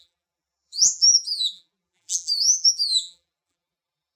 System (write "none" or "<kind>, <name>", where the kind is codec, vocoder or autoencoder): vocoder, BigVGAN v2